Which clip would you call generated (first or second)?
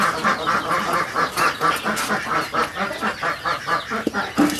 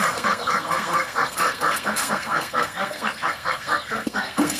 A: second